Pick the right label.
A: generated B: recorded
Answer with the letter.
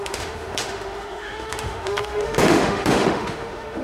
A